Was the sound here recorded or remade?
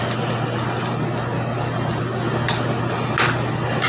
recorded